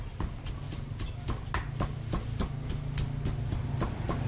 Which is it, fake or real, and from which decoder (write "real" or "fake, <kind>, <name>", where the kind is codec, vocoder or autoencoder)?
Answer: real